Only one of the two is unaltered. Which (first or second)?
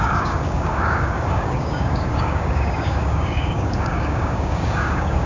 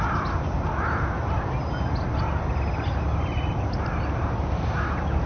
second